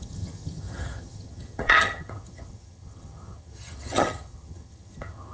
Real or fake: fake